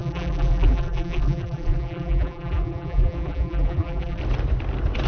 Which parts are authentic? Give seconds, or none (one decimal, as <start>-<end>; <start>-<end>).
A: 4.2-5.1